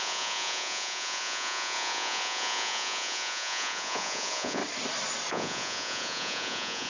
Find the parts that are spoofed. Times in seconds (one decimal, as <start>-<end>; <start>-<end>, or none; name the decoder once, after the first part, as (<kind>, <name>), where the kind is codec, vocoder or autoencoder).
0.0-4.6 (vocoder, Vocos); 5.3-6.9